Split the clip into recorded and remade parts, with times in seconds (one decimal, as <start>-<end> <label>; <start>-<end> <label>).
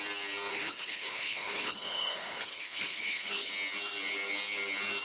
0.0-0.5 recorded; 0.5-3.5 remade; 3.5-5.0 recorded